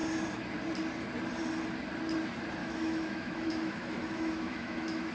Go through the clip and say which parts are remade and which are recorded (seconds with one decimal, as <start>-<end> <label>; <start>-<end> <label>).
0.0-2.6 recorded; 2.6-5.1 remade